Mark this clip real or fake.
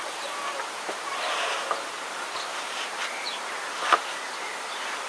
fake